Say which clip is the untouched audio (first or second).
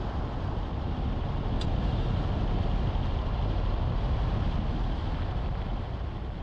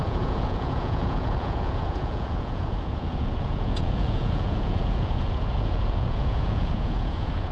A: first